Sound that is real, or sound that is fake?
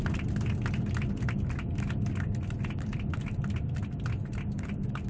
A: real